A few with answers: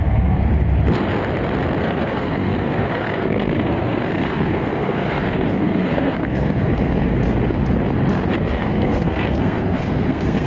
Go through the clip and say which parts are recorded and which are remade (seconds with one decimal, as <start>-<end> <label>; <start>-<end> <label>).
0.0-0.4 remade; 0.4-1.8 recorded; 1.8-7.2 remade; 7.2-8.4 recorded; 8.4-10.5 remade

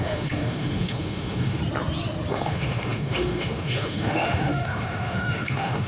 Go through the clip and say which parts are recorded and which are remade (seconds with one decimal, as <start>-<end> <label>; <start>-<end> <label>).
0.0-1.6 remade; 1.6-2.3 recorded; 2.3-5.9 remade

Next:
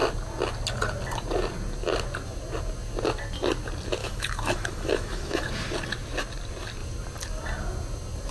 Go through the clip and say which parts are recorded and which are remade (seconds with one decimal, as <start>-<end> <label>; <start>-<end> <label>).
0.0-4.0 recorded; 4.0-5.5 remade; 5.5-8.3 recorded

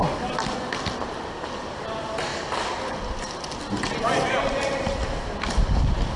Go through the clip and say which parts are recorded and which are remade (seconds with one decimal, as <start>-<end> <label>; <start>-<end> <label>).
0.0-3.6 recorded; 3.6-4.8 remade; 4.8-6.2 recorded

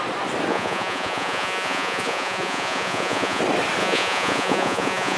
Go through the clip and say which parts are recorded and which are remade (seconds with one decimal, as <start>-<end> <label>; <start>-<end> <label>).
0.0-0.5 recorded; 0.5-3.4 remade; 3.4-3.8 recorded; 3.8-5.2 remade